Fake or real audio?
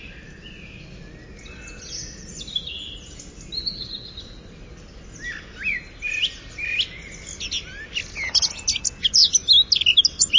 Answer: real